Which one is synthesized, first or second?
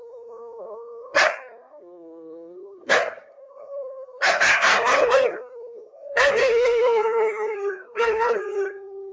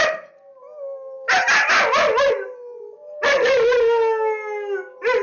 first